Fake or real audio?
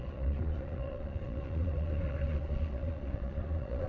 fake